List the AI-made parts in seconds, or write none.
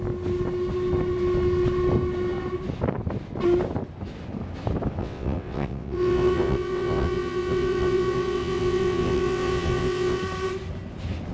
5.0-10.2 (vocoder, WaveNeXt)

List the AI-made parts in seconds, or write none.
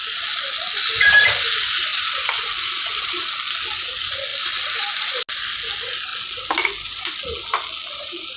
0.0-0.6 (vocoder, BigVGAN v2); 1.9-3.1; 4.3-5.1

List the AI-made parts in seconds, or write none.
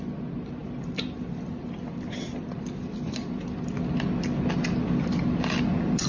0.6-1.7 (vocoder, BigVGAN v2)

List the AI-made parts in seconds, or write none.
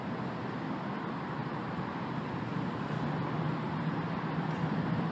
1.4-3.2 (vocoder, BigVGAN v2)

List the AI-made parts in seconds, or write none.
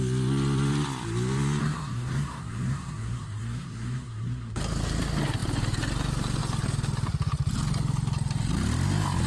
1.6-4.6 (codec, SNAC)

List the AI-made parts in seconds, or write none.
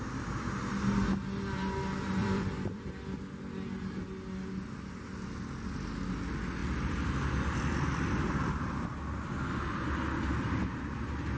2.2-2.9 (vocoder, BigVGAN v2); 6.6-7.9